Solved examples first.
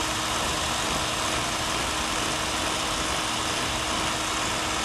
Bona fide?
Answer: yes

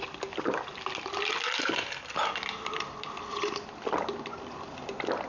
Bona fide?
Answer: yes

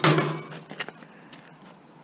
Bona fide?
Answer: yes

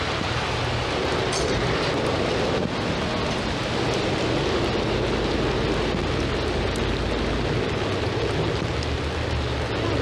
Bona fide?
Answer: yes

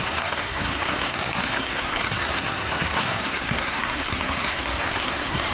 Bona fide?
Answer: no